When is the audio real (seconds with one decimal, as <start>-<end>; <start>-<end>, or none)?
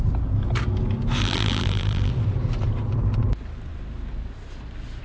0.0-1.2; 2.1-5.0